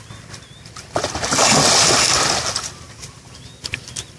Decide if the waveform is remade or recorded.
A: recorded